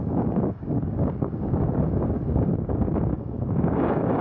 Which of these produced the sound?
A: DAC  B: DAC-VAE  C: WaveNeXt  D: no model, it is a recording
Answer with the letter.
A